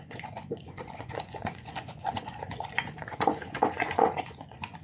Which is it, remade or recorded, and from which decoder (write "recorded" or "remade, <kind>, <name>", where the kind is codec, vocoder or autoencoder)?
remade, vocoder, Vocos